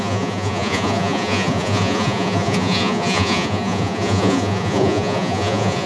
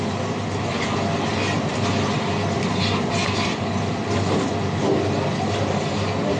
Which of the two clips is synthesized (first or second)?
first